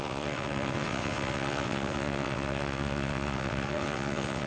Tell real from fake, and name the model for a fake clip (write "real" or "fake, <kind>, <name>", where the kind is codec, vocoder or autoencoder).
fake, vocoder, WaveNeXt